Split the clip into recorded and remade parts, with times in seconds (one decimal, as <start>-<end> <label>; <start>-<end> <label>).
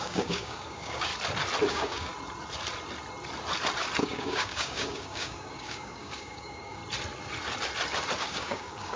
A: 0.0-1.1 remade; 1.1-1.7 recorded; 1.7-2.1 remade; 2.1-4.0 recorded; 4.0-6.8 remade; 6.8-8.2 recorded; 8.2-9.0 remade